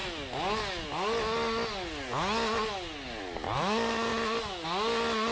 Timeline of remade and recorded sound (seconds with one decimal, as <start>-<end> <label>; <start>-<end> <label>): 0.0-5.3 recorded